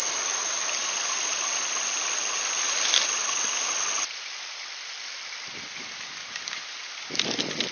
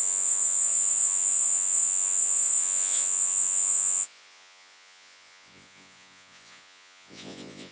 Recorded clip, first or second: first